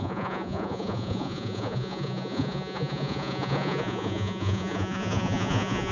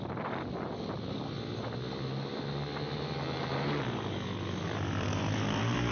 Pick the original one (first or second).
second